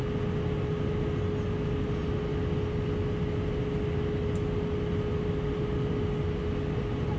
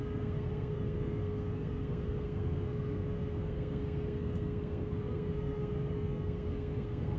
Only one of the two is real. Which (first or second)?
first